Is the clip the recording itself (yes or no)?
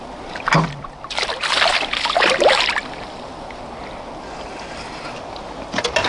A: yes